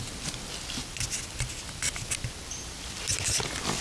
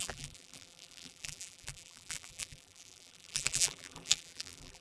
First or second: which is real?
first